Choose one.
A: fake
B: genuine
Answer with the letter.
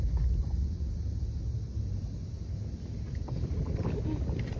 B